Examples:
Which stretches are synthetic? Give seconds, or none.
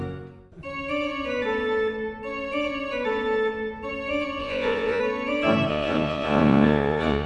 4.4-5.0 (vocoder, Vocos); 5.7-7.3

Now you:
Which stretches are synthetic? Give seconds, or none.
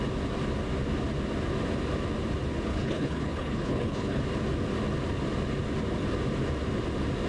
2.7-4.2 (codec, HILCodec)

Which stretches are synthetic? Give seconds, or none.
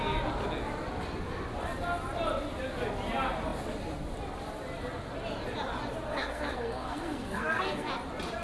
6.1-7.9 (codec, SNAC)